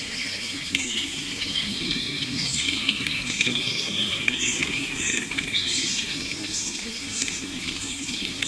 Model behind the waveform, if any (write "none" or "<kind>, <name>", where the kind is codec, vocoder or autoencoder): codec, SNAC